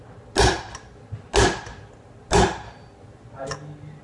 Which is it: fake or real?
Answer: real